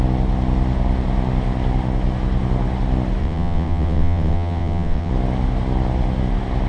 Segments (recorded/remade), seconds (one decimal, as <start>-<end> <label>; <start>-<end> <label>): 0.0-3.2 recorded; 3.2-5.1 remade; 5.1-6.7 recorded